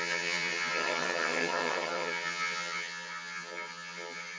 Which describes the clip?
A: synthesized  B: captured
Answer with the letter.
A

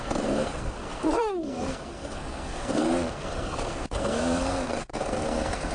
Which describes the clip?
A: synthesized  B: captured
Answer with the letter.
A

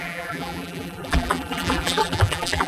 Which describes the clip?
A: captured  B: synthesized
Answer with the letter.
B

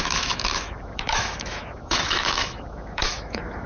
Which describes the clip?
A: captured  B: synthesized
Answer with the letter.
B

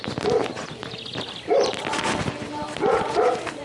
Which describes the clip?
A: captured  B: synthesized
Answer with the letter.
B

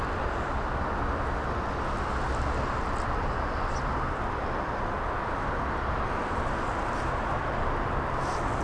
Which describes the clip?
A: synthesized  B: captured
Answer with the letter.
B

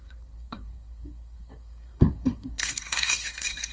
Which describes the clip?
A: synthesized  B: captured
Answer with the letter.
A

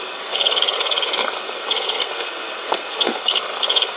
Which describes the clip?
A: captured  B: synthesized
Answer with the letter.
B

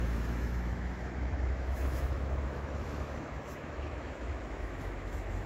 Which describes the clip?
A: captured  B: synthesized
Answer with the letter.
B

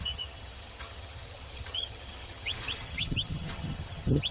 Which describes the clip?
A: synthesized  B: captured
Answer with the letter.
A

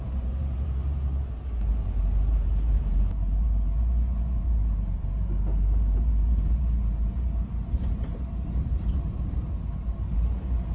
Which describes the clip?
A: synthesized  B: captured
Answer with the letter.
A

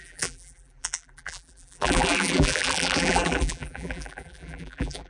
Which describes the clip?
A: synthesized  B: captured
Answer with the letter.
A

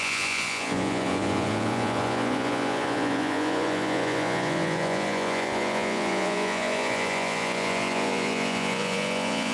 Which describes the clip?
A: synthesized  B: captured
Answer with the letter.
A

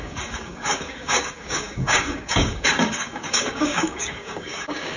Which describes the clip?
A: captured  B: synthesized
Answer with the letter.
B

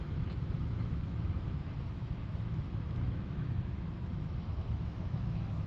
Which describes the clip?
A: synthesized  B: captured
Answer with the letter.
A